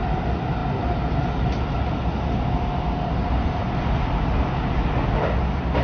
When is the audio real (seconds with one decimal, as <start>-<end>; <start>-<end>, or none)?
0.0-5.8